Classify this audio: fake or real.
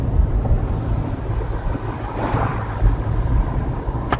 fake